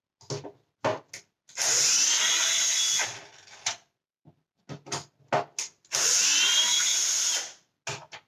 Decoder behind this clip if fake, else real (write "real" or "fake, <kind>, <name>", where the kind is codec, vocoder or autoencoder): real